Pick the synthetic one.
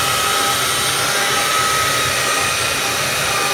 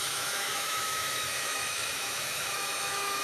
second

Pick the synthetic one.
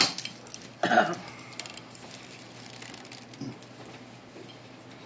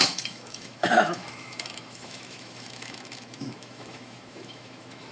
second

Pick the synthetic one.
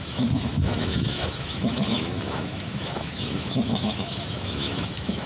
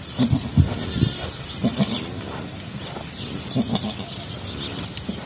first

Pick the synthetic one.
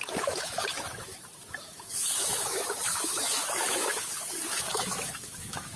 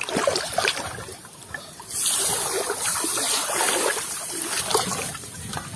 first